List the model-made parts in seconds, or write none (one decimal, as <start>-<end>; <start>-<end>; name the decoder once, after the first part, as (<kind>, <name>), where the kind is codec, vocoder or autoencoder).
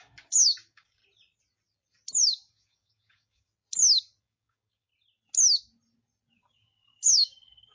0.0-1.0 (codec, DAC); 2.5-3.5; 4.2-4.9; 6.3-7.7